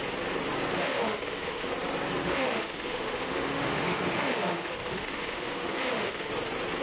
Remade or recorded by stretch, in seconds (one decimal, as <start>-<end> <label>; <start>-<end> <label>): 0.0-0.7 recorded; 0.7-1.7 remade; 1.7-2.2 recorded; 2.2-6.3 remade; 6.3-6.8 recorded